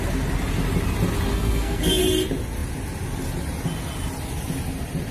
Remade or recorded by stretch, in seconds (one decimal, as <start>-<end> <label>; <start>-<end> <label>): 0.0-1.3 recorded; 1.3-2.0 remade; 2.0-5.1 recorded